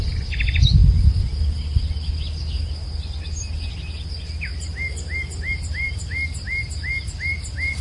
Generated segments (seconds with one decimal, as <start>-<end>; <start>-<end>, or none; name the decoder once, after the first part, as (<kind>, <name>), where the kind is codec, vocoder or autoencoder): none

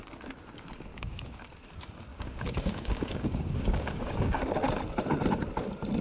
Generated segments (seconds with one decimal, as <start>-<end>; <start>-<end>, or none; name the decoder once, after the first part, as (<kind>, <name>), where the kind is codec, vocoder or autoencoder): 0.9-1.4 (codec, DAC); 2.1-4.4

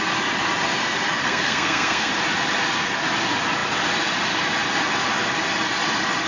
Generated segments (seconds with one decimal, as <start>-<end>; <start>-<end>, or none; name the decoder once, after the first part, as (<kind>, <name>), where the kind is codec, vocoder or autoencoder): 1.2-2.1 (codec, SNAC)

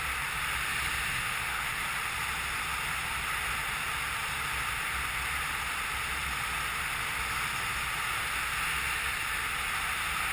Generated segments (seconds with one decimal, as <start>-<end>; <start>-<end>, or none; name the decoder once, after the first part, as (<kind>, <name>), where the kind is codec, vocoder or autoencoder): 1.1-1.8 (autoencoder, DAC-VAE)

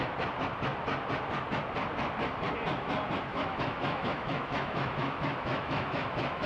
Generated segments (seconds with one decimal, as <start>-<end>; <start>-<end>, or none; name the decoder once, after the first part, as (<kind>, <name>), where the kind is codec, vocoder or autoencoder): 3.3-6.5 (autoencoder, DAC-VAE)

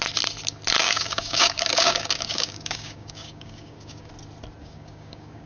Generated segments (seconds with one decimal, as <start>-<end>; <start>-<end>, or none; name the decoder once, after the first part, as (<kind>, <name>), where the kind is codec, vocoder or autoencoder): 0.8-4.1 (codec, DAC); 4.6-5.5